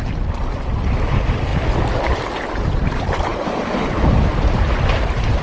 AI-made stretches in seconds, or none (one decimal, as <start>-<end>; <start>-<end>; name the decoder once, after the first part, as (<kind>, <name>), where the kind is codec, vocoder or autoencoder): none